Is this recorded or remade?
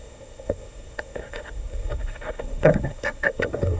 remade